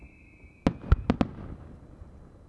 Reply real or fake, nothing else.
real